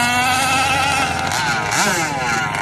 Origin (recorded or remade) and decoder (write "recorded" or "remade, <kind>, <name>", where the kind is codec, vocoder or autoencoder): recorded